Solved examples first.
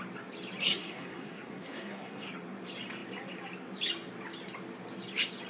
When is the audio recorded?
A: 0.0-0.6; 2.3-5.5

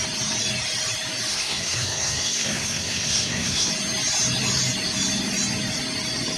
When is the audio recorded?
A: 0.0-1.3; 3.7-6.4